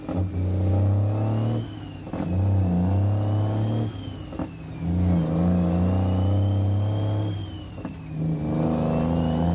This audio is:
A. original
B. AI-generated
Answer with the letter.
A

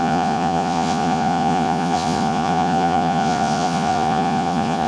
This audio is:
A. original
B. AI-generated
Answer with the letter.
B